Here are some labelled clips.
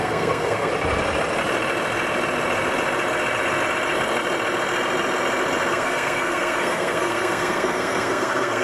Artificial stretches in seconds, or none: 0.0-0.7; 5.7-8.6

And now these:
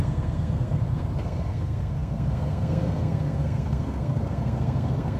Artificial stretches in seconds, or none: 0.0-5.2